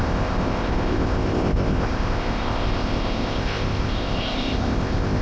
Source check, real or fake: fake